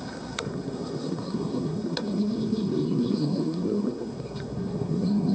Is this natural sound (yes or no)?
no